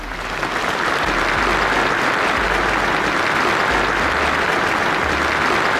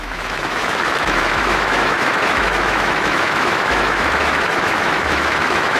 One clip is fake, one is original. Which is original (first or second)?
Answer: first